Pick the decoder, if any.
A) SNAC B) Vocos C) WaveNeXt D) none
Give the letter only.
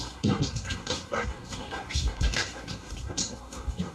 A